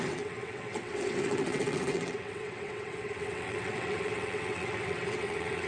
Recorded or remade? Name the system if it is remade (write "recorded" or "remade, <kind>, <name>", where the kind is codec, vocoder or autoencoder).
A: remade, vocoder, WaveNeXt